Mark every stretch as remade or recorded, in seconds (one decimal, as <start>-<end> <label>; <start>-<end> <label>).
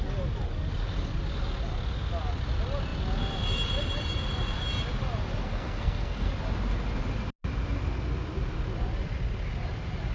0.0-5.4 recorded; 5.4-6.3 remade; 6.3-10.1 recorded